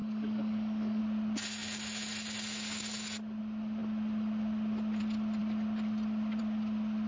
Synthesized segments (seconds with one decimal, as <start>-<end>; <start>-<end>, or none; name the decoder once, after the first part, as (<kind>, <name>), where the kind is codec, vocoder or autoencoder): 0.0-1.0 (codec, DAC)